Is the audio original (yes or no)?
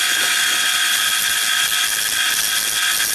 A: yes